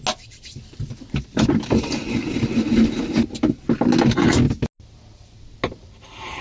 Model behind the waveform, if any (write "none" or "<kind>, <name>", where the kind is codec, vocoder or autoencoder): none